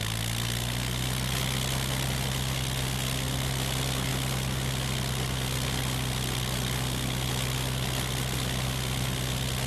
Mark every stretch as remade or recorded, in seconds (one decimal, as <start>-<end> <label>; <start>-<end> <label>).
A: 0.0-9.7 recorded